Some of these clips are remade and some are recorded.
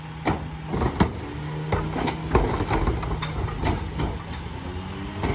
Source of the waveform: recorded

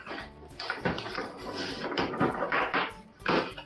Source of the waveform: remade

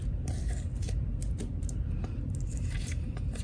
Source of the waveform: remade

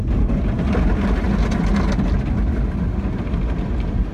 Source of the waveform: recorded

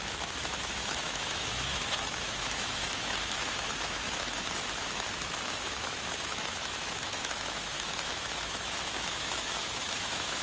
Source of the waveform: remade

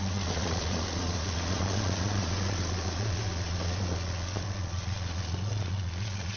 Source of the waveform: remade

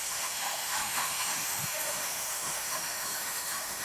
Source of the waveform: remade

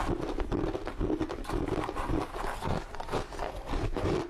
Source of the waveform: remade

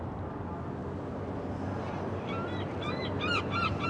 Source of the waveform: recorded